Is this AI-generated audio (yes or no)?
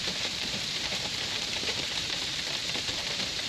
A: yes